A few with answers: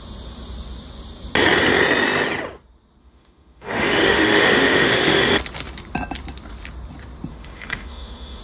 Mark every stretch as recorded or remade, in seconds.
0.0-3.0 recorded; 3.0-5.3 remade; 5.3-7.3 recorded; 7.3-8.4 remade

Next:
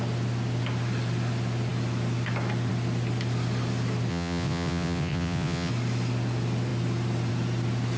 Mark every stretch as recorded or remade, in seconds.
0.0-4.1 recorded; 4.1-5.7 remade; 5.7-8.0 recorded

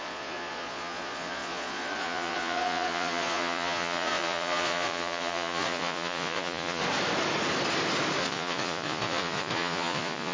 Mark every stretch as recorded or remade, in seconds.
0.0-6.8 remade; 6.8-8.2 recorded; 8.2-10.3 remade